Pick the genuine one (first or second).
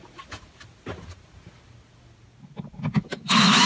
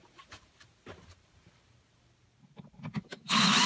first